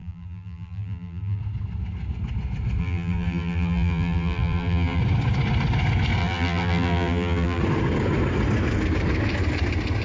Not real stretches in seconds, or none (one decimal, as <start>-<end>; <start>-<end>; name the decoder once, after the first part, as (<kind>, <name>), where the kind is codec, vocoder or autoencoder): 0.0-1.4 (vocoder, BigVGAN v2); 2.8-5.0; 6.2-7.6